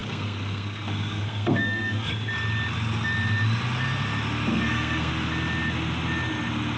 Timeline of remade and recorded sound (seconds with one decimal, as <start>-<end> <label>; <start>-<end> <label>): 0.0-2.1 remade; 2.1-4.5 recorded; 4.5-5.1 remade; 5.1-6.8 recorded